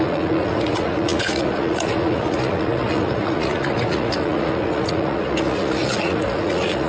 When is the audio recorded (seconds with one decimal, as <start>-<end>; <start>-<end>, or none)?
none